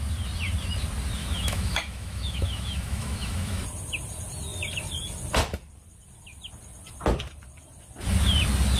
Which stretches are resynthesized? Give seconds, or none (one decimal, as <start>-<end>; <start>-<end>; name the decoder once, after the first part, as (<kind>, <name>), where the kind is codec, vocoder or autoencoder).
1.2-3.6 (autoencoder, DAC-VAE)